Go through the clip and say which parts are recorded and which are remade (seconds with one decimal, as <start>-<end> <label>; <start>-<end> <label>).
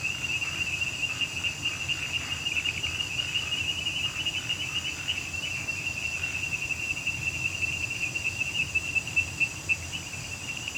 0.0-10.8 recorded